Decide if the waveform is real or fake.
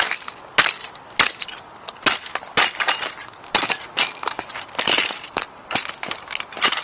real